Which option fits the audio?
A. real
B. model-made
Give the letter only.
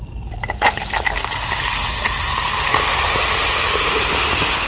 A